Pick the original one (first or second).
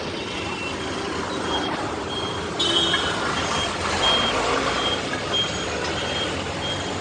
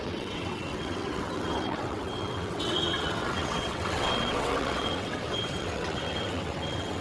first